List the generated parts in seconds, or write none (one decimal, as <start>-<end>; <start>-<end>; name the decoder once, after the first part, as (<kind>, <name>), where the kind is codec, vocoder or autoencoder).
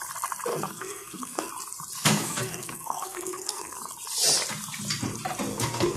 0.5-1.5 (codec, SNAC); 2.0-3.8; 5.5-6.0